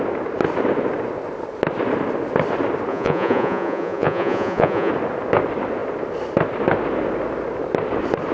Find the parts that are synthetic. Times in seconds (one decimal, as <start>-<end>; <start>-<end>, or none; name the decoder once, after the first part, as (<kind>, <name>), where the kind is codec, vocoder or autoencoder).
2.9-4.9 (vocoder, Vocos)